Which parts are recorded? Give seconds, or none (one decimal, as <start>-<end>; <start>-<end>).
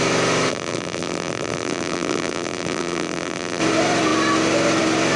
0.0-0.5; 3.6-5.2